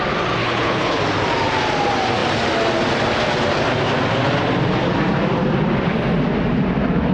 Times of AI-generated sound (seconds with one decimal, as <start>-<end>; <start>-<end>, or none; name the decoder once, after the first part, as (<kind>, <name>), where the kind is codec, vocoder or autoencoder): 0.4-1.0 (codec, HILCodec)